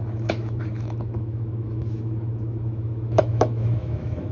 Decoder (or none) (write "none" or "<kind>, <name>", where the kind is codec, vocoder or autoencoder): autoencoder, DAC-VAE